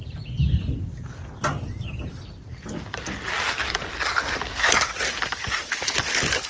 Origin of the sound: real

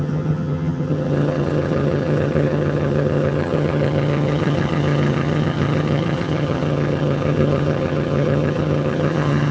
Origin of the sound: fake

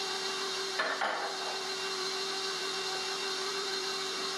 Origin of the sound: fake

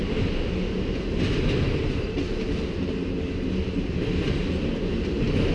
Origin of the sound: real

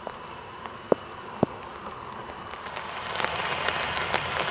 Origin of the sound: real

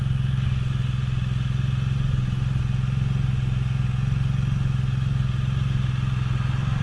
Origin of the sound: real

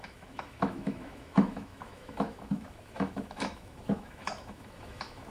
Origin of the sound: fake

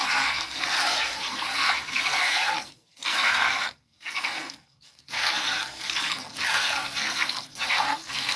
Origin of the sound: fake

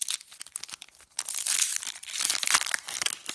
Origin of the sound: real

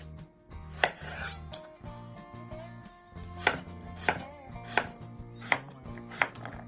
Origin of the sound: real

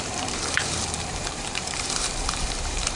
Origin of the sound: fake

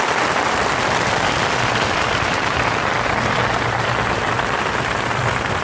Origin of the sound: real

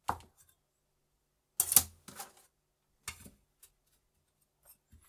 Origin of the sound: real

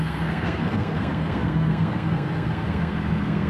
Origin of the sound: fake